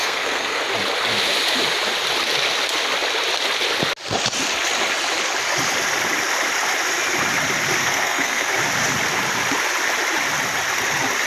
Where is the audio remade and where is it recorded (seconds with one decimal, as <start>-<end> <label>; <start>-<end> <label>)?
0.0-0.6 remade; 0.6-7.8 recorded; 7.8-8.5 remade; 8.5-11.3 recorded